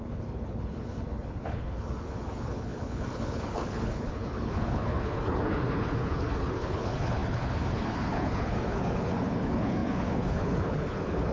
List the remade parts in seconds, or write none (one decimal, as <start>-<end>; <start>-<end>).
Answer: 0.0-11.3